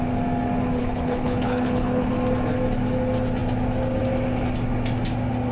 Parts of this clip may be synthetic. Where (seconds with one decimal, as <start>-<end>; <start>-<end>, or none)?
0.8-2.1